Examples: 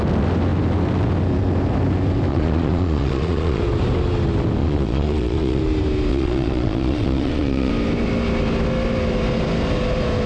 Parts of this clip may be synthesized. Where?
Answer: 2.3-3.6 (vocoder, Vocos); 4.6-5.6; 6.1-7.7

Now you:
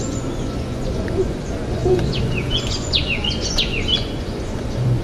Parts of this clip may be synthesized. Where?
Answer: 0.0-5.0 (vocoder, Vocos)

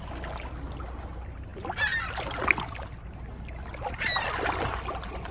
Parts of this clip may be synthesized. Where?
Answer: none

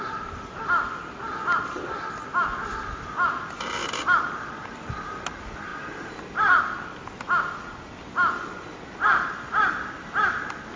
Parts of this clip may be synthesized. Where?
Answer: none

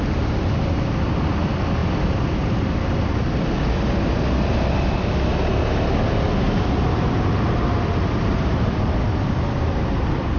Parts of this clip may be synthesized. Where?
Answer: none

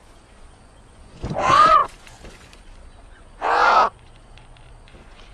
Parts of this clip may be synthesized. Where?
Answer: 0.0-5.3 (vocoder, Vocos)